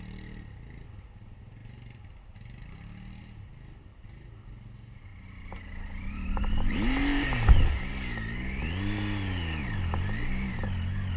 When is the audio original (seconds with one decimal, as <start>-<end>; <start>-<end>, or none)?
0.0-11.2